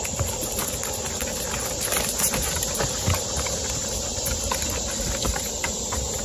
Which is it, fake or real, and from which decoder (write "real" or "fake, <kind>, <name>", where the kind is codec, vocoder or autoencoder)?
real